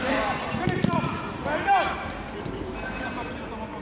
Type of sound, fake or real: real